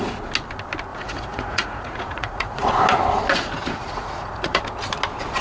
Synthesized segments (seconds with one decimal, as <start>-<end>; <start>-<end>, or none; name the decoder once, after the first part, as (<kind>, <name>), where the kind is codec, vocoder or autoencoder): 0.9-2.7 (vocoder, Vocos); 3.3-4.6

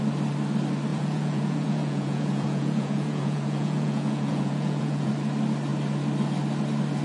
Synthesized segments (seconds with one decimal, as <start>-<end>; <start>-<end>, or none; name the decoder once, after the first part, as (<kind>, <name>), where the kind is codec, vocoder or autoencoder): 0.9-5.1 (vocoder, Vocos)